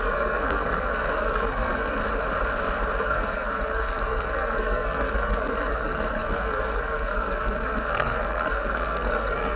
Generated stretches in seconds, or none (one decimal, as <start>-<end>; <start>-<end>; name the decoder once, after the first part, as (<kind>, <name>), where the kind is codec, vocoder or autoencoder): 0.0-2.0 (codec, SNAC); 3.0-9.6

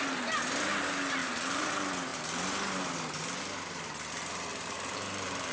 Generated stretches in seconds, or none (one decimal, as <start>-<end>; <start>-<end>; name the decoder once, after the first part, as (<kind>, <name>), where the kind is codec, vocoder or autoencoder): 1.2-1.7 (vocoder, BigVGAN v2); 4.5-5.5